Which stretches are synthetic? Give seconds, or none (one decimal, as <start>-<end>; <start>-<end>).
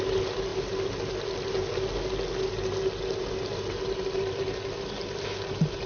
none